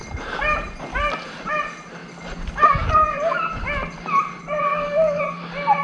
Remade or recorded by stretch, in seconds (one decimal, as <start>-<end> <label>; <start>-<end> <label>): 0.0-4.7 recorded; 4.7-5.2 remade; 5.2-5.8 recorded